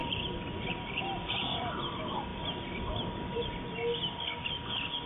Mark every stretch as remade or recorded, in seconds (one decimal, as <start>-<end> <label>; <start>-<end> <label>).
0.0-5.1 recorded